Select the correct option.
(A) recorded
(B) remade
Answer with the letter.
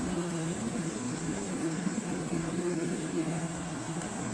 B